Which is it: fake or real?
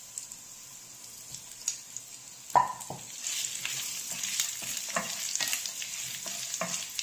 real